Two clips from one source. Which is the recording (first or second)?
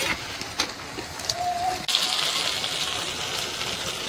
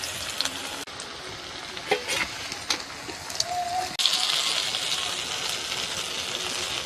second